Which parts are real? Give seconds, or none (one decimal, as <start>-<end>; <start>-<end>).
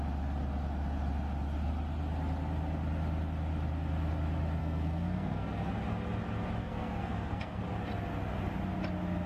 0.0-4.6; 5.7-6.6; 7.6-9.3